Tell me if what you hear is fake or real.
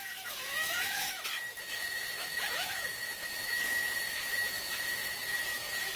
fake